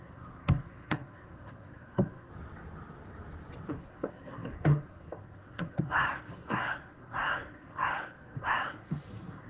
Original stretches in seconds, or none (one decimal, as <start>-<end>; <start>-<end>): 2.3-3.7